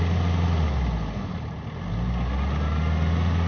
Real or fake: real